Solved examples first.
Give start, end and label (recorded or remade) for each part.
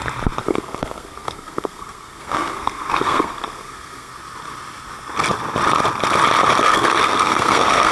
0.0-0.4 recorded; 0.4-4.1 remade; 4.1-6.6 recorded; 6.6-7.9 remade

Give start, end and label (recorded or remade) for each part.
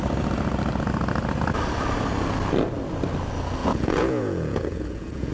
0.0-3.6 recorded; 3.6-5.3 remade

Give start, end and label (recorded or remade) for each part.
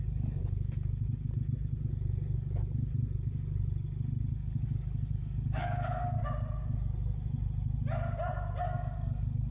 0.0-0.4 remade; 0.4-4.3 recorded; 4.3-6.2 remade; 6.2-8.6 recorded; 8.6-9.5 remade